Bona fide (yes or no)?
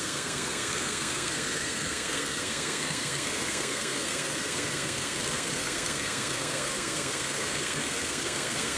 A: no